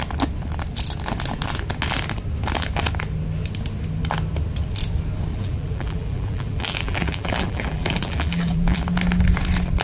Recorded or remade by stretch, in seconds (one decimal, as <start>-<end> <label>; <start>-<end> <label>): 0.0-5.3 recorded; 5.3-8.8 remade; 8.8-9.8 recorded